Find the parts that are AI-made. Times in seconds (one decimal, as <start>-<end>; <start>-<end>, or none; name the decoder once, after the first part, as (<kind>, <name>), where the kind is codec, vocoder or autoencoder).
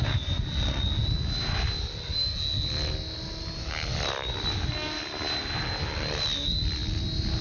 none